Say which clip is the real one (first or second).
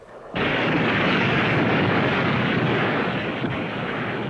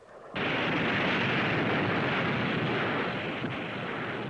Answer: second